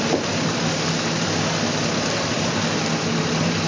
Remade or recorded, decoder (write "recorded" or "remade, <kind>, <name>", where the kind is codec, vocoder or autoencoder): recorded